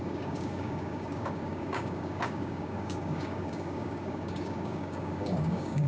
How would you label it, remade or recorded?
remade